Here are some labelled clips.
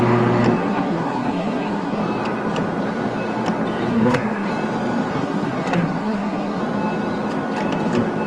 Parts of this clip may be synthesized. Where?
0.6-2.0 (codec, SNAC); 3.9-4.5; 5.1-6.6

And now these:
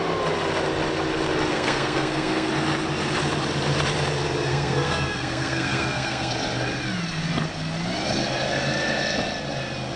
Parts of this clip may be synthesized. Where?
1.5-2.5 (codec, SNAC); 4.5-6.3